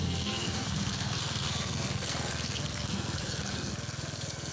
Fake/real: fake